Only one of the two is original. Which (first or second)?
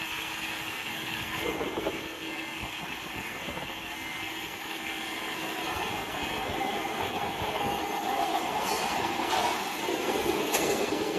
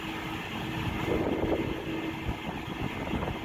second